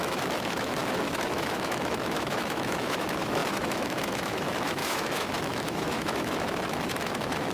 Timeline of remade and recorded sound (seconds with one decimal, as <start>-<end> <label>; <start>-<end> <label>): 0.0-7.5 remade

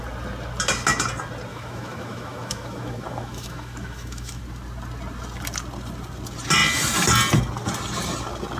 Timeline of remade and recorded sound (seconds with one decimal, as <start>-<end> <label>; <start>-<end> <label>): 0.0-1.5 recorded; 1.5-4.4 remade; 4.4-8.6 recorded

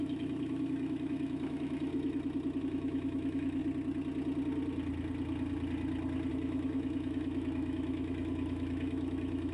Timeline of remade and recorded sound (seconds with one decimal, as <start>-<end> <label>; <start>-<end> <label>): 0.0-1.9 remade; 1.9-2.6 recorded; 2.6-3.6 remade; 3.6-6.3 recorded; 6.3-9.5 remade

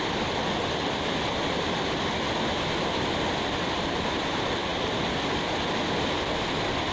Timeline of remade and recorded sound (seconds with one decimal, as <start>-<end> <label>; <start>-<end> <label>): 0.0-6.9 recorded

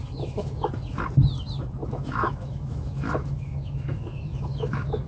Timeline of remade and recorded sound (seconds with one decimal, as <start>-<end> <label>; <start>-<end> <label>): 0.0-0.7 remade; 0.7-1.8 recorded; 1.8-5.1 remade

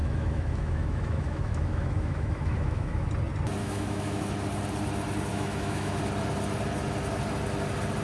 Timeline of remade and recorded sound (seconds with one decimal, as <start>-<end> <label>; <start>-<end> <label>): 0.0-3.1 remade; 3.1-3.6 recorded; 3.6-4.2 remade; 4.2-5.3 recorded; 5.3-6.0 remade; 6.0-8.0 recorded

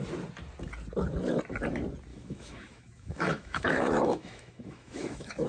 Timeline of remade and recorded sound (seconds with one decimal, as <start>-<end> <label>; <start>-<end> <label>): 0.0-2.1 recorded; 2.1-5.5 remade

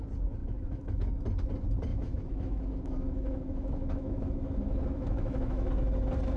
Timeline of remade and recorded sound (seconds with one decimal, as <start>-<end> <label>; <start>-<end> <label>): 0.0-0.4 recorded; 0.4-1.1 remade; 1.1-1.9 recorded; 1.9-5.7 remade; 5.7-6.4 recorded